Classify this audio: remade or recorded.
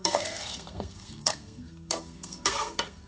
remade